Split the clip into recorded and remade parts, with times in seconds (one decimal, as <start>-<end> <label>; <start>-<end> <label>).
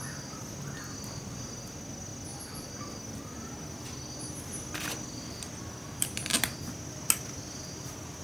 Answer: 0.0-8.2 recorded